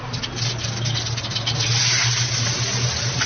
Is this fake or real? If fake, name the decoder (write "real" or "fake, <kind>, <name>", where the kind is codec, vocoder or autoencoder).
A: real